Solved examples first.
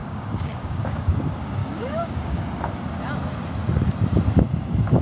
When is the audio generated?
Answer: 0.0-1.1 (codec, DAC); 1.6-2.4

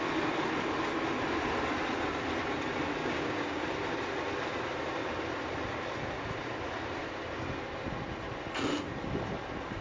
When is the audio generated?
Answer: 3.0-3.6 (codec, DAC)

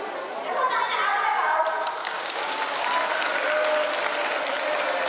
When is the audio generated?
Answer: 2.0-2.8 (codec, DAC)